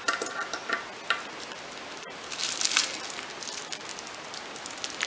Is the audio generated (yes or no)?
no